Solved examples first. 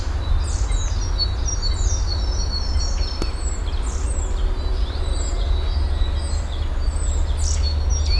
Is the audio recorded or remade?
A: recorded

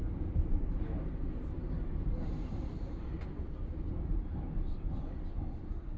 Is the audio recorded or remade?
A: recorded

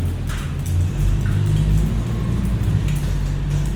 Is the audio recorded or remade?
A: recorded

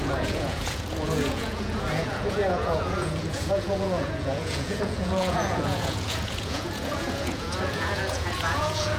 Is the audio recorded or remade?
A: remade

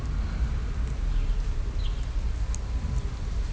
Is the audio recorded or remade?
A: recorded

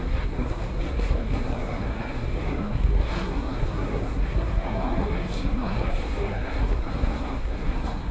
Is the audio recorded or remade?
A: remade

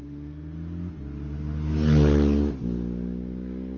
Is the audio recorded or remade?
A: recorded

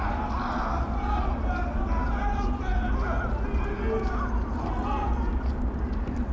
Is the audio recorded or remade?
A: recorded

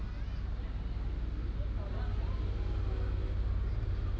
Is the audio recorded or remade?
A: recorded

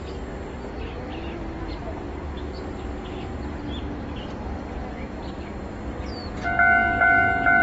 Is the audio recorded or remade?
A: recorded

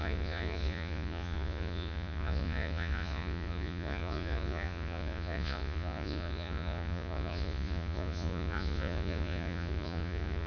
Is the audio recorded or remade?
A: remade